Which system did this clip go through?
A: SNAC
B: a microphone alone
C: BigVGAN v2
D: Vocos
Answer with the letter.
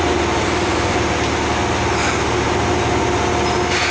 B